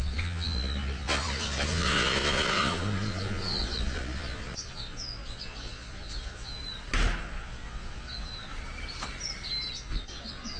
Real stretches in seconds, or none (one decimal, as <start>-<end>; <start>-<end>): 6.6-7.2; 8.5-9.7